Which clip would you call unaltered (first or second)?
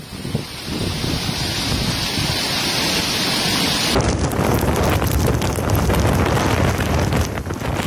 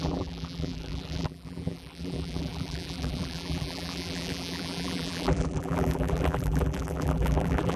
first